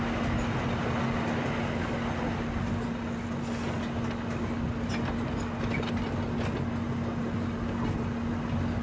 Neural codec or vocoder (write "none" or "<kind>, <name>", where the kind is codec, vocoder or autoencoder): none